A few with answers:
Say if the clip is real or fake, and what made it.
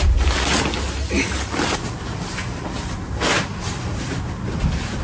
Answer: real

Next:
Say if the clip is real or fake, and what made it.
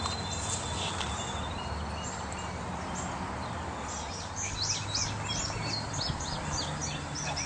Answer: real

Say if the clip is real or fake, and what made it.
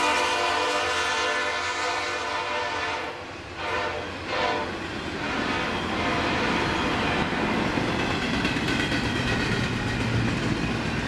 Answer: real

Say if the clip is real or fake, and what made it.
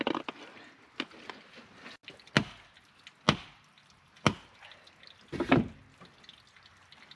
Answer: real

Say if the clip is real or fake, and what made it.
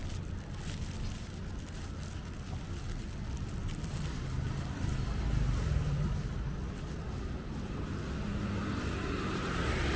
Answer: real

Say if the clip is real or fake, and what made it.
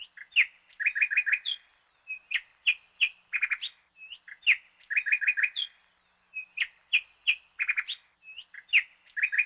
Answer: real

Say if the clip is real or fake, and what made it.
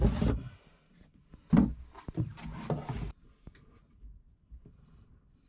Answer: real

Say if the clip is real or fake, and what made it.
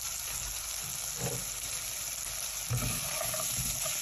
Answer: real